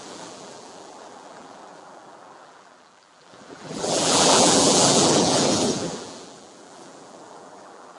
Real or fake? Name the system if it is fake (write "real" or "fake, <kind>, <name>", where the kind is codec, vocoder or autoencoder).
fake, vocoder, BigVGAN v2